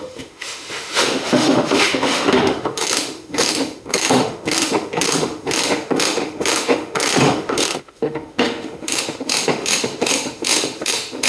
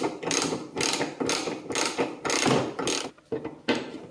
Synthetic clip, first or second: first